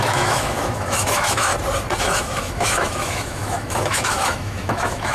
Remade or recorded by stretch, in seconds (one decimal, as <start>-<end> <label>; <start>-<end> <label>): 0.0-1.5 remade; 1.5-2.0 recorded; 2.0-5.1 remade

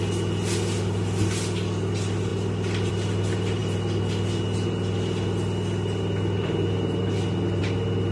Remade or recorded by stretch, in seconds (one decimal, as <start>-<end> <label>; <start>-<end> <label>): 0.0-8.1 recorded